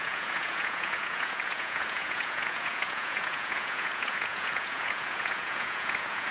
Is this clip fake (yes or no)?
yes